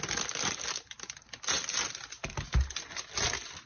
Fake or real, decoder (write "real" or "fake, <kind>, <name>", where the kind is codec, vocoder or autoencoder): real